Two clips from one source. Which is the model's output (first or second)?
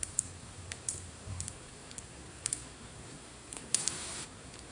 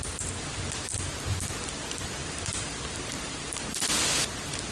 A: first